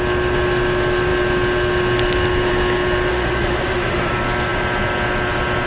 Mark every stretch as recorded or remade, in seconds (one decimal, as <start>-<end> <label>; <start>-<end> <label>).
0.0-3.1 recorded; 3.1-4.1 remade; 4.1-5.7 recorded